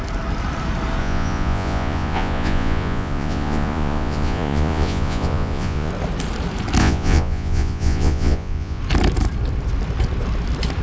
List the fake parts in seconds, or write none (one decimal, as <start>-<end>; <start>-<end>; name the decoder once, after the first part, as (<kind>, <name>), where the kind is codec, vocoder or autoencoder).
1.0-5.9 (vocoder, Vocos); 6.8-8.8